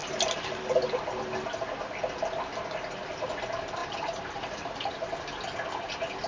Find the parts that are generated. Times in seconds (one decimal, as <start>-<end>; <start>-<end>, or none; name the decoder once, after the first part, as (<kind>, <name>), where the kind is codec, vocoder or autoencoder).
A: 3.8-5.2 (vocoder, BigVGAN v2)